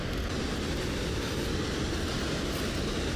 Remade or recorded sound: recorded